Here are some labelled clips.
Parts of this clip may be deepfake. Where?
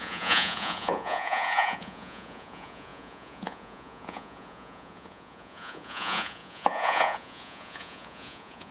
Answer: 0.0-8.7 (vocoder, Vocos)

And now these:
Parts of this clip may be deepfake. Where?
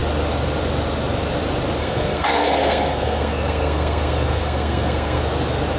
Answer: 1.8-5.2 (codec, SNAC)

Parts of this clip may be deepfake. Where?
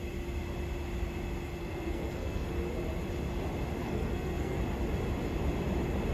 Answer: 1.6-2.5 (codec, SNAC); 3.8-4.6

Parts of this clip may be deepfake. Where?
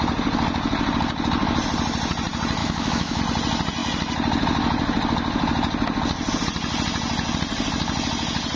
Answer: 2.6-3.2 (autoencoder, DAC-VAE)